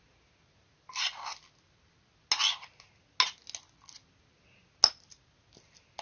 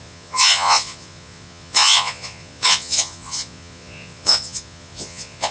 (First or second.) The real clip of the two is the first